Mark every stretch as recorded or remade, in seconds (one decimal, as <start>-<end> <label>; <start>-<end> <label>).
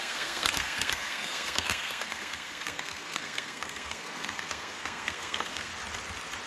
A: 0.0-5.7 remade; 5.7-6.5 recorded